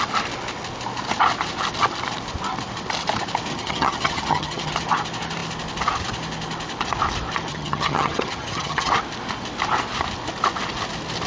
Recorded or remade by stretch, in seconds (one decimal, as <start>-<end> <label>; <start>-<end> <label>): 0.0-3.5 recorded; 3.5-4.7 remade; 4.7-7.5 recorded; 7.5-8.9 remade; 8.9-11.3 recorded